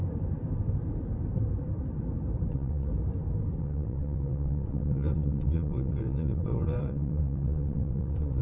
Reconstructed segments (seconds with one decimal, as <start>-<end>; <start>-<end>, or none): 2.5-2.9; 3.6-8.4